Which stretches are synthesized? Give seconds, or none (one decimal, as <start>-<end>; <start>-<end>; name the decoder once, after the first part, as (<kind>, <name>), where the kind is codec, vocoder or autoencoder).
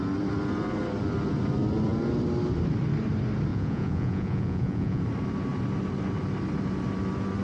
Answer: 3.5-5.0 (vocoder, Vocos)